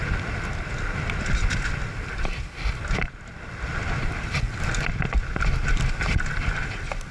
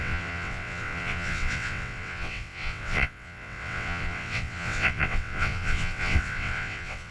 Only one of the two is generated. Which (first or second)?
second